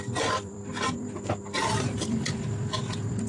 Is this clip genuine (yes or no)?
no